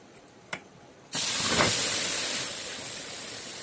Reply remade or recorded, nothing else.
recorded